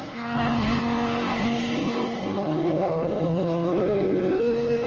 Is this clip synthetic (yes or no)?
yes